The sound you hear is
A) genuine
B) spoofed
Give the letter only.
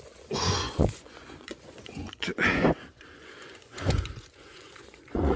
B